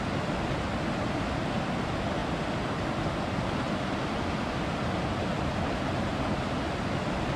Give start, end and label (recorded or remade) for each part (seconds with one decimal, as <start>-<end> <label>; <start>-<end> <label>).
0.0-7.4 recorded